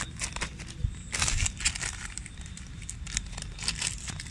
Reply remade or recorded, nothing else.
recorded